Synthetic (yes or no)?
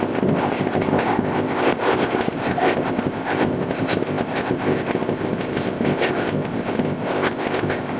yes